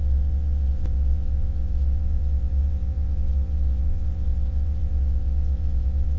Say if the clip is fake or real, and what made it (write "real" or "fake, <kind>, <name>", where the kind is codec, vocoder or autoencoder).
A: fake, vocoder, WaveNeXt